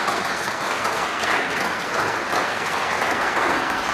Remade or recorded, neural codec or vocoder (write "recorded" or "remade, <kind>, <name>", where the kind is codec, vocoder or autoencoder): remade, codec, SNAC